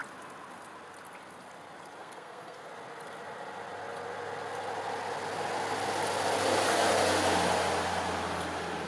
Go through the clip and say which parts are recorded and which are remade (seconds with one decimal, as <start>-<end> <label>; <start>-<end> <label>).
0.0-2.0 recorded; 2.0-2.7 remade; 2.7-8.9 recorded